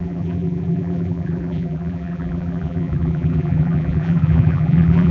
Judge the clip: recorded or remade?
remade